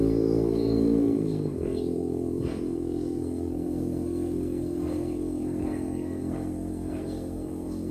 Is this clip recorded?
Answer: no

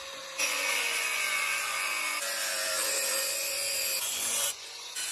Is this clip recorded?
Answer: no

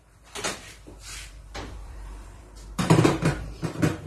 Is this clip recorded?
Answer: no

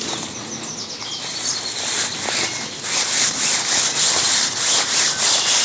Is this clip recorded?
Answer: yes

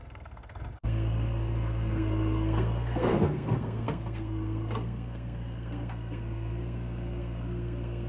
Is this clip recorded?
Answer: no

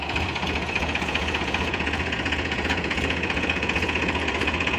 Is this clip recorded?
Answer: no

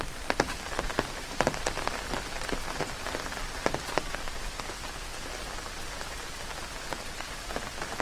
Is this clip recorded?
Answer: yes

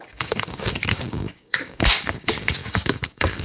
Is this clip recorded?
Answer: no